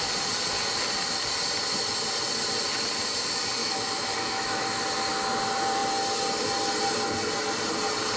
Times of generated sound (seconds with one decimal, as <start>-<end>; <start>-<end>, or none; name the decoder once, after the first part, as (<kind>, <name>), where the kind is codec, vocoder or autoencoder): 3.6-4.8 (autoencoder, DAC-VAE)